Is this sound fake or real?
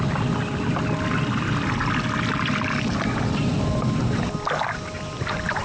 real